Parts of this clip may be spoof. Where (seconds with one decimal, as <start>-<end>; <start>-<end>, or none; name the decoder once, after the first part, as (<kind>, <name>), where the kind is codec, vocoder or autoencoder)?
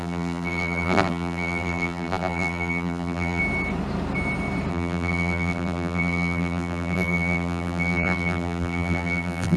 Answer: 0.0-3.4 (vocoder, BigVGAN v2); 4.7-9.6